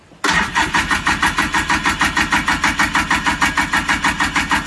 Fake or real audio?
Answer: real